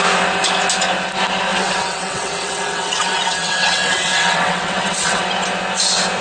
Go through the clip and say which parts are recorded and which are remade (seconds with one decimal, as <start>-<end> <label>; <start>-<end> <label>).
0.0-1.5 recorded; 1.5-5.2 remade; 5.2-6.2 recorded